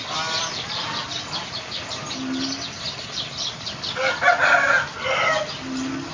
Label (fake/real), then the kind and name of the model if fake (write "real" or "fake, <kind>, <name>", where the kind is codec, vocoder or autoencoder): real